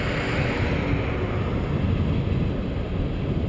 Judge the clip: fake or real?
real